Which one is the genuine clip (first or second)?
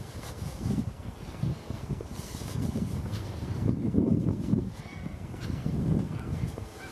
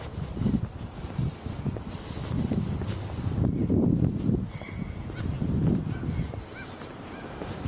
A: second